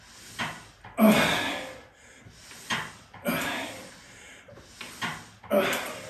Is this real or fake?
real